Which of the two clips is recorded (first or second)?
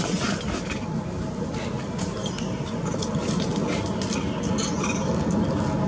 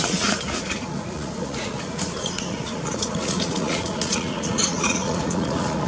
first